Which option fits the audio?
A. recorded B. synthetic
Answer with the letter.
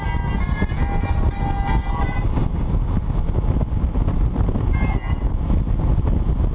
A